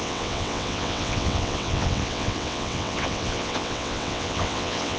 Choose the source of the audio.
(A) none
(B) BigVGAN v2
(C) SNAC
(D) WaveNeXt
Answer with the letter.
D